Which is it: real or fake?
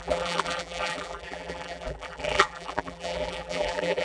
fake